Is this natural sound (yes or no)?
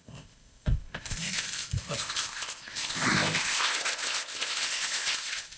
no